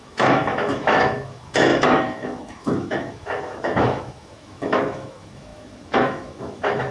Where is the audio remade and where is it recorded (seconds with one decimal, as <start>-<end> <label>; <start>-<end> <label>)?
0.0-6.9 remade